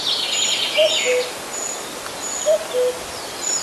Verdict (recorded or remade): recorded